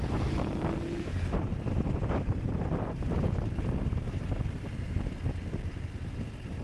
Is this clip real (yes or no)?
yes